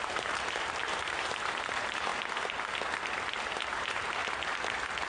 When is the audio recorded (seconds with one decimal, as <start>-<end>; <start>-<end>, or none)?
2.1-3.7; 4.2-5.1